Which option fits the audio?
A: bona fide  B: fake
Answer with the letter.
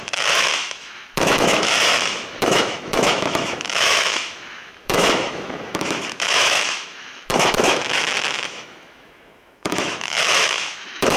B